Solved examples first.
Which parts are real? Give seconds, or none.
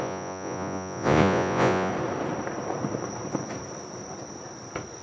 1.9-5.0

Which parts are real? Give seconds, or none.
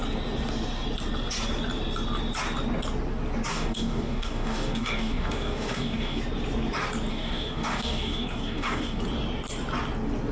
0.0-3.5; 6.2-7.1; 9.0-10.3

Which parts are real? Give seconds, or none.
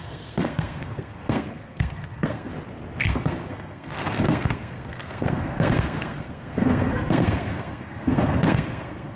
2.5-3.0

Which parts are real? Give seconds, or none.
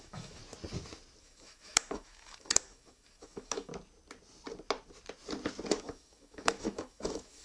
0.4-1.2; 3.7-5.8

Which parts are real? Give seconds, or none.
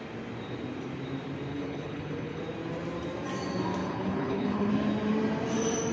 0.0-1.5; 2.4-3.8; 4.7-5.9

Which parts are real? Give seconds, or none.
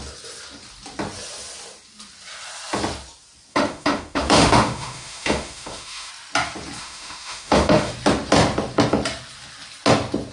0.0-3.5; 6.1-6.8; 7.9-10.3